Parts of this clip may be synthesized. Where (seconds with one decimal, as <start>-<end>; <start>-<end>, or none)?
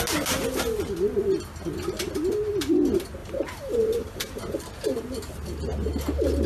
3.2-4.4